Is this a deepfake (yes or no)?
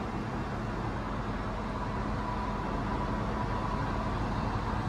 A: no